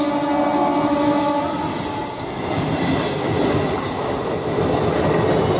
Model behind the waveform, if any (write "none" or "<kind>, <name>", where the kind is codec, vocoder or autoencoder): none